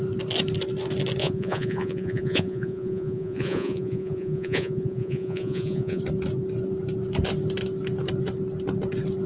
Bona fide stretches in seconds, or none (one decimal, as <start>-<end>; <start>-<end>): 0.0-1.2; 6.0-9.3